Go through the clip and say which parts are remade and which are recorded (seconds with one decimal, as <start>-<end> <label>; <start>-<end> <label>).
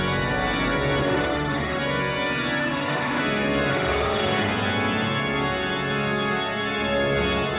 0.0-1.0 recorded; 1.0-1.8 remade; 1.8-2.6 recorded; 2.6-3.2 remade; 3.2-3.7 recorded; 3.7-4.5 remade; 4.5-7.6 recorded